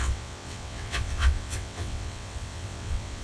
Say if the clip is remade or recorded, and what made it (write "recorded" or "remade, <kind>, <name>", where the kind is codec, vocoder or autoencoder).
remade, vocoder, WaveNeXt